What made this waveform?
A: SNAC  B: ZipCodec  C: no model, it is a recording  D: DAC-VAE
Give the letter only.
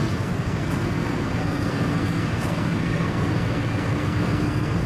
A